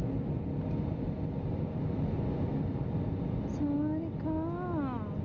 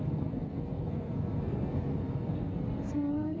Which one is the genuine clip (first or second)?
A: first